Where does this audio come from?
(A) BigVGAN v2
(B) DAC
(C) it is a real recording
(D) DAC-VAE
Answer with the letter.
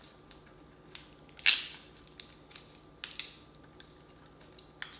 C